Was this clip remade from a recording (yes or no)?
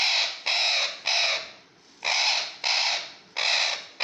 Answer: no